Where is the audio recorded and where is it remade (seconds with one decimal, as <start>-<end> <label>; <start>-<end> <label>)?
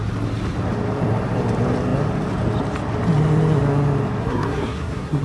0.0-4.2 recorded; 4.2-5.2 remade